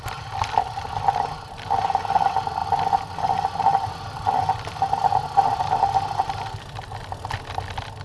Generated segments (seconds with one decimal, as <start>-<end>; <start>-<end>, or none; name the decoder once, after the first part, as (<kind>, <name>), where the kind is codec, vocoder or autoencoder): none